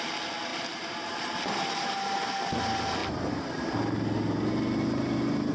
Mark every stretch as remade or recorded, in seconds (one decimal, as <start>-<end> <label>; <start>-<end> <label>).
0.0-0.5 recorded; 0.5-2.1 remade; 2.1-5.5 recorded

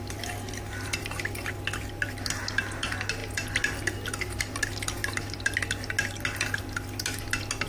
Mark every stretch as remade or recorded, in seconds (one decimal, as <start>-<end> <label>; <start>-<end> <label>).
0.0-7.7 recorded

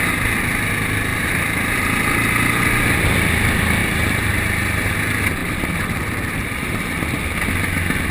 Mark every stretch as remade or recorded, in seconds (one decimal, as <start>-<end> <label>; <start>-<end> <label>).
0.0-1.1 recorded; 1.1-1.7 remade; 1.7-3.8 recorded; 3.8-4.9 remade; 4.9-5.4 recorded; 5.4-7.5 remade; 7.5-8.1 recorded

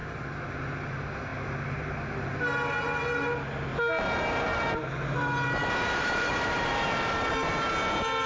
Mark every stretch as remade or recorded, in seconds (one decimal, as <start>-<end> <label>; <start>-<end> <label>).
0.0-3.7 recorded; 3.7-4.9 remade; 4.9-5.6 recorded; 5.6-7.5 remade; 7.5-8.3 recorded

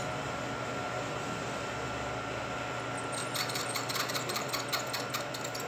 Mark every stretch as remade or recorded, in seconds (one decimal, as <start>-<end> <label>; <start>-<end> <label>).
0.0-3.2 recorded; 3.2-4.5 remade; 4.5-5.7 recorded

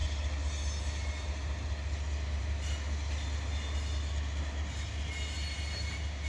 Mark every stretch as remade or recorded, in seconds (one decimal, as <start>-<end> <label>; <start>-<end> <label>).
0.0-6.3 recorded